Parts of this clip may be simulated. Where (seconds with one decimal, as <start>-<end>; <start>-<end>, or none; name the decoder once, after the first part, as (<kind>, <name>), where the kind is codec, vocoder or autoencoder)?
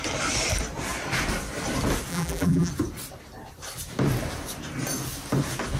2.1-2.7 (vocoder, BigVGAN v2)